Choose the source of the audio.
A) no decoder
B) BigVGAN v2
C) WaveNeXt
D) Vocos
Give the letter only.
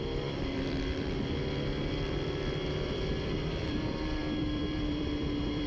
B